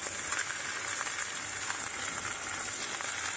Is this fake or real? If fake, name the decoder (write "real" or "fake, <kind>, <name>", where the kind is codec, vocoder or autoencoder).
real